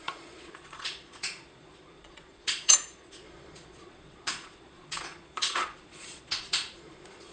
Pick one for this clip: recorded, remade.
remade